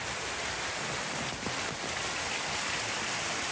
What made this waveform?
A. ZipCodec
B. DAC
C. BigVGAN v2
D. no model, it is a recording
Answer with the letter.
D